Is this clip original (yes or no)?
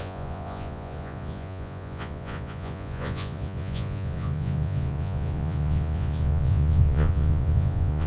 no